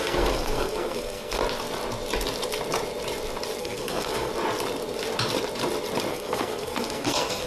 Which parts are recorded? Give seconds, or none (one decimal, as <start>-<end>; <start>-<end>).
1.4-3.6; 4.3-6.1